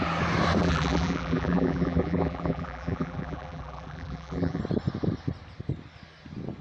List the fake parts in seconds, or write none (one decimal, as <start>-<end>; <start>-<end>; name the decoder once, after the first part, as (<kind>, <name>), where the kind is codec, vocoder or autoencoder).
0.6-4.6 (vocoder, BigVGAN v2)